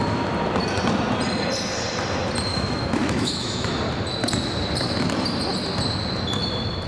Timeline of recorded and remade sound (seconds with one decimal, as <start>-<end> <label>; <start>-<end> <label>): 0.0-2.5 recorded; 2.5-3.7 remade; 3.7-6.9 recorded